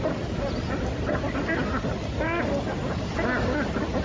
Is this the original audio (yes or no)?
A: yes